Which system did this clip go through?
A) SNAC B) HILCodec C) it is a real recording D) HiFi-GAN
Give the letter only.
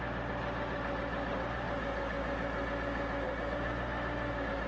C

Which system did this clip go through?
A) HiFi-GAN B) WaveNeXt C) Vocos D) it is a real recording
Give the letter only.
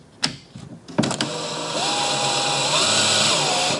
D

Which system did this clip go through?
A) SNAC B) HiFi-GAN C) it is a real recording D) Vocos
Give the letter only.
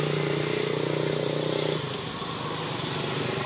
C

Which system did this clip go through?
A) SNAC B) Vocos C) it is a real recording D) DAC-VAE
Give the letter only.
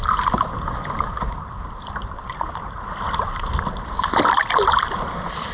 C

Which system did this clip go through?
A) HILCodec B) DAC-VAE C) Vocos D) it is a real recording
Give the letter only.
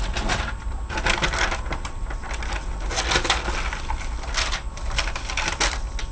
D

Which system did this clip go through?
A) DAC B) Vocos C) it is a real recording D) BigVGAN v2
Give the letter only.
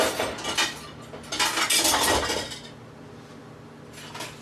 C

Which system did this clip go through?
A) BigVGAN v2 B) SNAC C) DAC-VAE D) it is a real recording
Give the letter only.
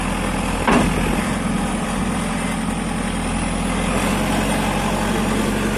D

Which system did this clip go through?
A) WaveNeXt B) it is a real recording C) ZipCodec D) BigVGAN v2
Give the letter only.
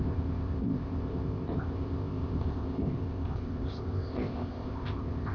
C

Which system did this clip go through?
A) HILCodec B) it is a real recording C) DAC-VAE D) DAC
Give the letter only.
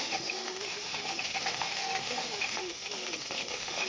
C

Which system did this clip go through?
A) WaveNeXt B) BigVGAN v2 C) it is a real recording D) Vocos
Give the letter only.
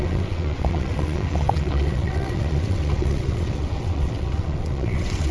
A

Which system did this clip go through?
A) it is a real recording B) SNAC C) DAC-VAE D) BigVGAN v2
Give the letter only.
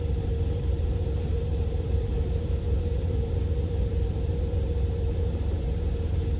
D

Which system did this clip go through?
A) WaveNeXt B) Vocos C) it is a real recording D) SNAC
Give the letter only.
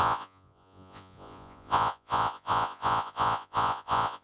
B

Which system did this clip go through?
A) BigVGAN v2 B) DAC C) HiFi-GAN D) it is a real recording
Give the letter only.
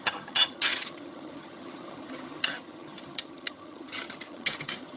C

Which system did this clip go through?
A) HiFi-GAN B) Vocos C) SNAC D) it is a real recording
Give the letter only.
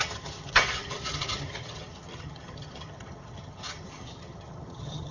A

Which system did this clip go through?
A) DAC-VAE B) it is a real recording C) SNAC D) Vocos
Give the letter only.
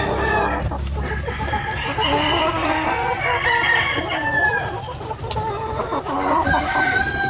B